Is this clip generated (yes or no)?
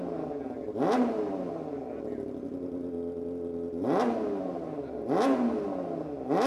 no